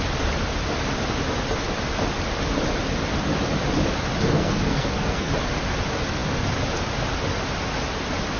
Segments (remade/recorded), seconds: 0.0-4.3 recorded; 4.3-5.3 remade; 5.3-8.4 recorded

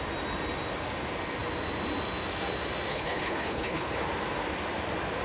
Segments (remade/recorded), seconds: 0.0-2.9 recorded; 2.9-3.9 remade; 3.9-5.2 recorded

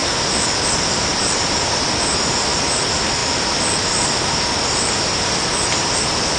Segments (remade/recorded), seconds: 0.0-6.4 recorded

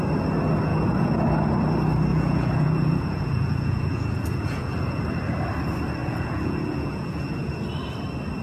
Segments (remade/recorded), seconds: 0.0-0.7 recorded; 0.7-1.2 remade; 1.2-2.1 recorded; 2.1-5.0 remade; 5.0-6.0 recorded; 6.0-7.5 remade; 7.5-8.4 recorded

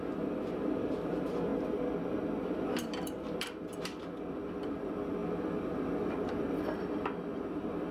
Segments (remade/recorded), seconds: 0.0-1.5 remade; 1.5-2.5 recorded; 2.5-7.9 remade